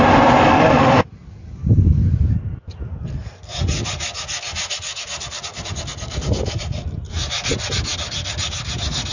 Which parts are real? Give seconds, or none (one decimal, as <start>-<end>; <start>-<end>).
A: 0.0-9.1